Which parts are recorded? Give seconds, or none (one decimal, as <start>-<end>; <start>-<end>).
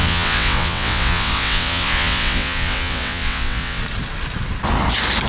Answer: 3.8-5.3